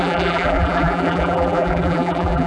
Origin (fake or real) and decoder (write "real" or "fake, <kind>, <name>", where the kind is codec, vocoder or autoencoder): fake, vocoder, BigVGAN v2